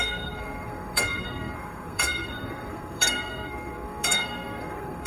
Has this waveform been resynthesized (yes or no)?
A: yes